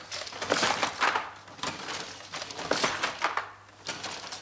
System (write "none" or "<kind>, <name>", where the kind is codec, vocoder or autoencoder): none